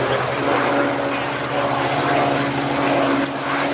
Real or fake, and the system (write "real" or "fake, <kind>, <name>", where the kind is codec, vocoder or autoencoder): real